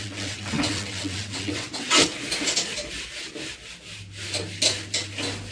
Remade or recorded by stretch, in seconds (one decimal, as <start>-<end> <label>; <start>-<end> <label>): 0.0-2.1 remade; 2.1-5.5 recorded